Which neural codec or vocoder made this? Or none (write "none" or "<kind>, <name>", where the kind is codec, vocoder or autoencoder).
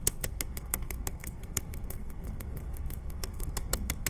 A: codec, SNAC